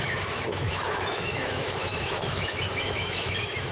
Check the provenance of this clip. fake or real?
fake